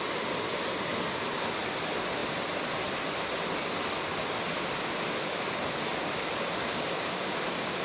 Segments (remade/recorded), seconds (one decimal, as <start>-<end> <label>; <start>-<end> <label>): 0.0-7.8 recorded